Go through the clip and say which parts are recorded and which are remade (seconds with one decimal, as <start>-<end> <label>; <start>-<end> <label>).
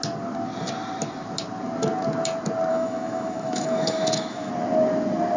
0.0-2.7 recorded; 2.7-4.5 remade; 4.5-5.4 recorded